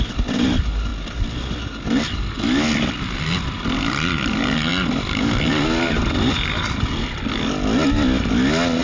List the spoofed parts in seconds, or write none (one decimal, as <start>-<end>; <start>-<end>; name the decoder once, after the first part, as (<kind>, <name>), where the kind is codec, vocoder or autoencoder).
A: none